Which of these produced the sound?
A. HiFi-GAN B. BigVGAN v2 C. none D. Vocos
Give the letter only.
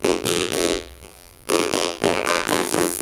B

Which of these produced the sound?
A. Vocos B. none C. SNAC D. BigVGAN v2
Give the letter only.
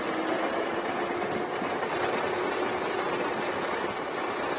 B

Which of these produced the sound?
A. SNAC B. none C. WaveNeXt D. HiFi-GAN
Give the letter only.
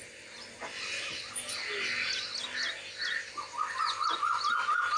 B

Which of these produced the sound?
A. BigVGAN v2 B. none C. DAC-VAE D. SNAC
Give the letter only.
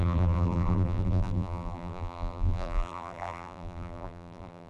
A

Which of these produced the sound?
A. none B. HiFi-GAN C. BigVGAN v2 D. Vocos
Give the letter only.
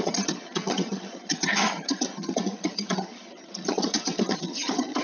B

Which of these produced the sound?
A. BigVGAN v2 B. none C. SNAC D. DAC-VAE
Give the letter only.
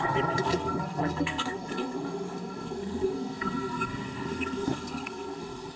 C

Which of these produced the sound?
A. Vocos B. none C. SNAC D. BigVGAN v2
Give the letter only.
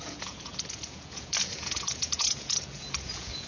A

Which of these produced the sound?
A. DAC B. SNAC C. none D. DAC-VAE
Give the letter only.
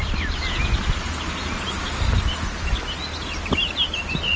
C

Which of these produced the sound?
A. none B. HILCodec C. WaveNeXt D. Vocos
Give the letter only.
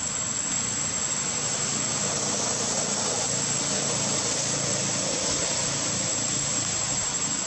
A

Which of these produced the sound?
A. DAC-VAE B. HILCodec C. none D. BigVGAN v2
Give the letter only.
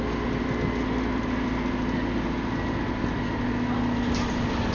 C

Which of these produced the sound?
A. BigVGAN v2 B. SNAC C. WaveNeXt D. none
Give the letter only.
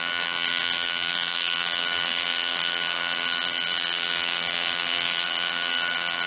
A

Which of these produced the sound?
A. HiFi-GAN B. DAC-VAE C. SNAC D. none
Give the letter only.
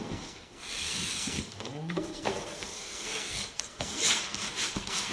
C